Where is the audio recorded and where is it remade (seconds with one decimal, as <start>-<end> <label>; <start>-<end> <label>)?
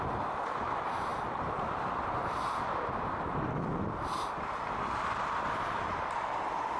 0.0-6.8 recorded